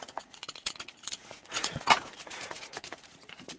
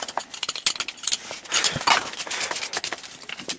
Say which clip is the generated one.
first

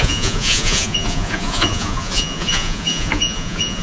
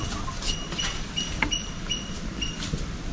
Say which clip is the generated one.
first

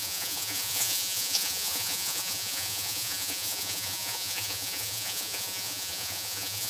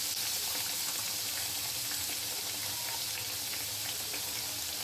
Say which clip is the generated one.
first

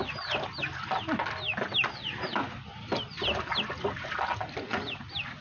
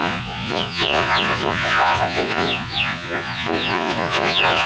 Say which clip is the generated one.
second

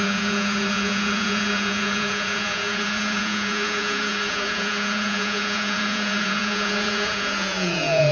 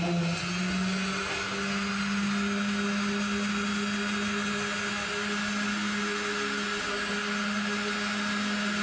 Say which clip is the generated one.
first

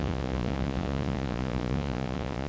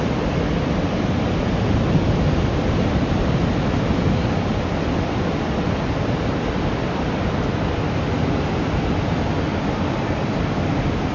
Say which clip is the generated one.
first